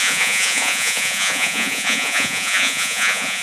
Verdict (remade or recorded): remade